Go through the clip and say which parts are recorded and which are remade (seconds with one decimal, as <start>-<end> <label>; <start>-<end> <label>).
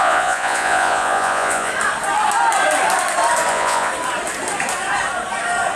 0.0-1.7 remade; 1.7-3.5 recorded; 3.5-3.9 remade; 3.9-5.8 recorded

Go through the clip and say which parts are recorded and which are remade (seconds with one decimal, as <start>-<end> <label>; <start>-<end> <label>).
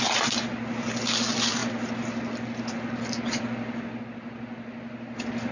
0.0-5.5 recorded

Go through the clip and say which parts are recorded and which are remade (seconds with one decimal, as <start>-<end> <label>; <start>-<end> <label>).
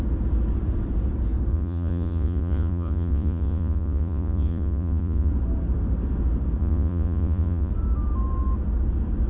0.0-1.5 recorded; 1.5-5.3 remade; 5.3-6.6 recorded; 6.6-7.7 remade; 7.7-9.3 recorded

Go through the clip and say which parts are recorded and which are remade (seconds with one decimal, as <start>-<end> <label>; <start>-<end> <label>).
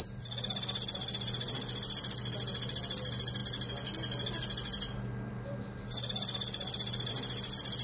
0.0-7.8 recorded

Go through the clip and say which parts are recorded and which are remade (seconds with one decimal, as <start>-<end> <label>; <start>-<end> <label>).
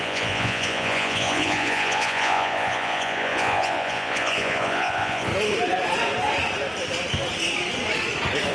0.0-5.3 remade; 5.3-8.5 recorded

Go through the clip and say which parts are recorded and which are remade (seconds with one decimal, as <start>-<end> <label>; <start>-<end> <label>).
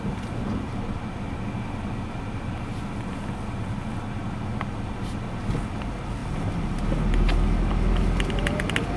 0.0-9.0 recorded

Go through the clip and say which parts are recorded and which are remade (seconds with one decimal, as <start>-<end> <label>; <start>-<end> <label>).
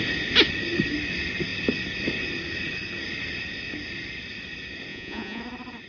0.0-4.9 recorded; 4.9-5.4 remade; 5.4-5.9 recorded